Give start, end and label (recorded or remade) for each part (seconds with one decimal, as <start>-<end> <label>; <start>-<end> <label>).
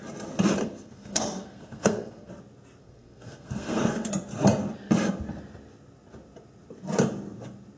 0.0-0.6 recorded; 0.6-2.3 remade; 2.3-2.8 recorded; 2.8-4.1 remade; 4.1-7.8 recorded